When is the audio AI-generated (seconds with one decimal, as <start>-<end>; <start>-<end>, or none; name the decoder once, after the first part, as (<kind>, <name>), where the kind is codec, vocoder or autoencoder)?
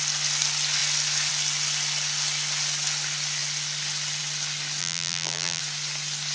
4.8-5.6 (vocoder, BigVGAN v2)